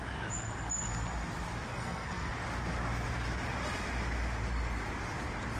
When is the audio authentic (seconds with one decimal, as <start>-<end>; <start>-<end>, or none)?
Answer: 0.0-1.7; 2.3-5.6